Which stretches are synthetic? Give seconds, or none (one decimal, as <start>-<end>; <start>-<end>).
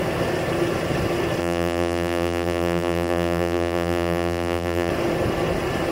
1.4-4.9